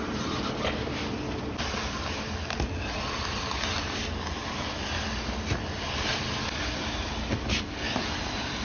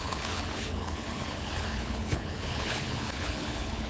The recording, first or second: first